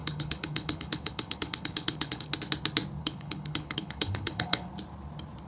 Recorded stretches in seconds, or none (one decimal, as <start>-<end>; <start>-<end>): 2.3-3.0; 4.7-5.5

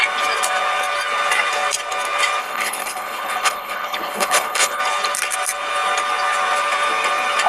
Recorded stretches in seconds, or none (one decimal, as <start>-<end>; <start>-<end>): 0.0-2.4; 4.8-7.5

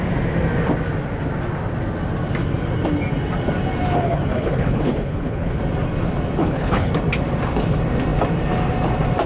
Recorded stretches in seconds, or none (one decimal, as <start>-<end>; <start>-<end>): 0.0-4.0; 5.6-6.4; 6.9-9.3

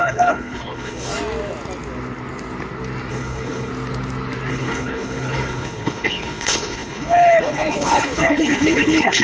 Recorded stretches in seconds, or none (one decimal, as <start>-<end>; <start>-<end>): 1.1-3.1; 3.7-4.5